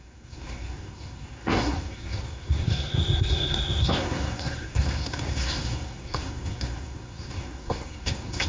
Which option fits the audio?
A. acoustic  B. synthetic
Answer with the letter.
B